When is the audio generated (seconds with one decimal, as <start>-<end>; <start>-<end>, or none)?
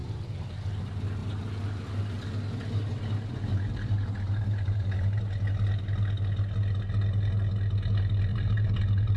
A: 0.0-0.5; 3.5-5.2; 8.3-9.2